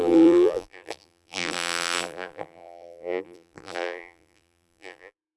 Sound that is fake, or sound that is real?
fake